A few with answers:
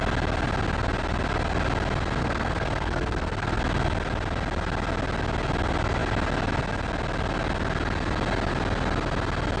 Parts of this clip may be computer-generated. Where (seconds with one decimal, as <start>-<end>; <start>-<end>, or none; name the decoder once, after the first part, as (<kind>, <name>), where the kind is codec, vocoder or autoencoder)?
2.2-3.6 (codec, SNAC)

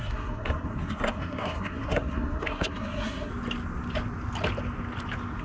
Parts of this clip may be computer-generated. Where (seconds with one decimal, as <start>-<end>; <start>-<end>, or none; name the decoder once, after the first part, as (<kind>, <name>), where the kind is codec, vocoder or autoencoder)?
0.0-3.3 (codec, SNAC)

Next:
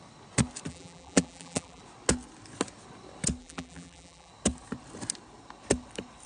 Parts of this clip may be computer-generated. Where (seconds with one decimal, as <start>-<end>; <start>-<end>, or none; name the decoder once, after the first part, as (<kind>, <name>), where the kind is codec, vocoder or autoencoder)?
0.7-1.8 (vocoder, BigVGAN v2); 3.4-4.3

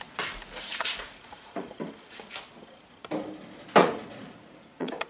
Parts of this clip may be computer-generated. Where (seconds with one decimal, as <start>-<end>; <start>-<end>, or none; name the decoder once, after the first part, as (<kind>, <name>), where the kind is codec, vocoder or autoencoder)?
0.7-1.8 (vocoder, Vocos); 3.8-5.1

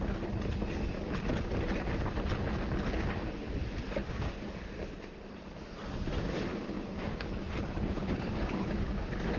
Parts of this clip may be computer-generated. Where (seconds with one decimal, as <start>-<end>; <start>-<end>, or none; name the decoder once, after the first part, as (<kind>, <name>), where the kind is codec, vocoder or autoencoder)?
4.0-4.5 (codec, DAC); 6.5-7.3; 8.0-9.0

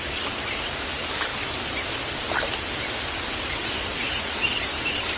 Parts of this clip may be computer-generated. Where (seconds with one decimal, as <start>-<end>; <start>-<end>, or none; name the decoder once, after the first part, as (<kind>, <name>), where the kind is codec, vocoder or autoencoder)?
0.0-1.3 (vocoder, BigVGAN v2); 4.0-5.2